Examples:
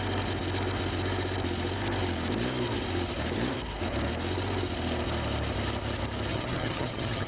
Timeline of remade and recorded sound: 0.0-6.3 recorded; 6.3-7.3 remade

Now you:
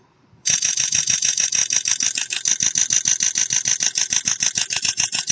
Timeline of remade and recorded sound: 0.0-1.6 remade; 1.6-4.8 recorded; 4.8-5.3 remade

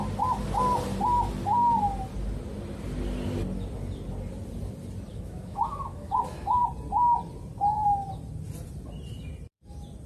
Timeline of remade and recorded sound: 0.0-5.1 recorded; 5.1-6.6 remade; 6.6-10.1 recorded